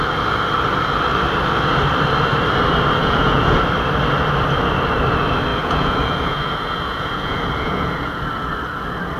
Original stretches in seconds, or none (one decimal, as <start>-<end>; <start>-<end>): 0.0-3.0; 3.6-5.5; 8.2-9.2